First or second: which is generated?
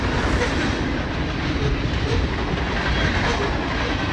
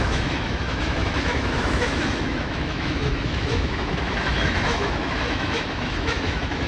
second